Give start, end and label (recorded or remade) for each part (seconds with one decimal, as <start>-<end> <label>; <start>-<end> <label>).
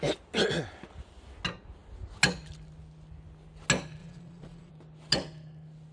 0.0-4.0 recorded; 4.0-4.7 remade; 4.7-5.9 recorded